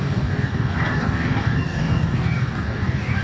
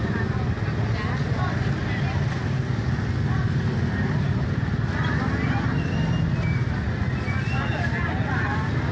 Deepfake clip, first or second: first